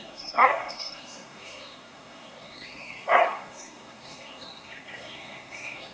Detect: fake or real fake